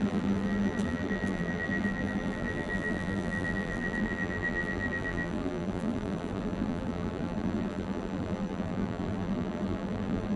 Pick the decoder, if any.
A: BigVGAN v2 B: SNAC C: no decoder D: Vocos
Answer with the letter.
A